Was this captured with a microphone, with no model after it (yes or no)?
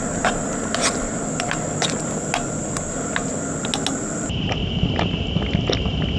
yes